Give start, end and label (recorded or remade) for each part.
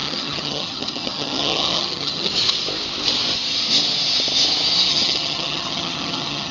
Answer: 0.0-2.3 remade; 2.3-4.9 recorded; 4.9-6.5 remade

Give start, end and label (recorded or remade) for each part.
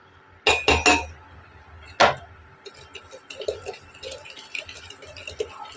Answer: 0.0-5.8 recorded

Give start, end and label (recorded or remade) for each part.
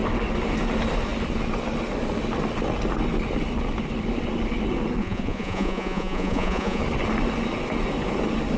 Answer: 0.0-5.0 recorded; 5.0-6.8 remade; 6.8-8.6 recorded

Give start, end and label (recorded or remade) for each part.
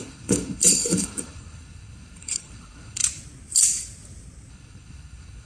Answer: 0.0-3.0 remade; 3.0-4.5 recorded; 4.5-5.5 remade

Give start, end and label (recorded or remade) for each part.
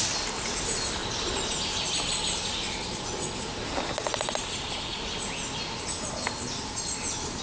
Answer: 0.0-7.4 recorded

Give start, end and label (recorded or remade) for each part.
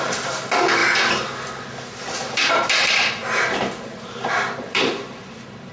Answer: 0.0-0.8 recorded; 0.8-1.5 remade; 1.5-2.2 recorded; 2.2-5.7 remade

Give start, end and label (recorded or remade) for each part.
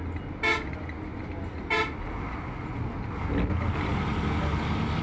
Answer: 0.0-5.0 recorded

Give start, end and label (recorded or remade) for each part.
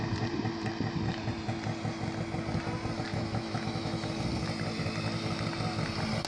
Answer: 0.0-3.1 recorded; 3.1-4.1 remade; 4.1-6.3 recorded